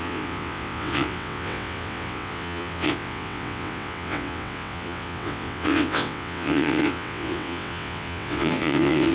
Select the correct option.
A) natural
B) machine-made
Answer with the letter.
B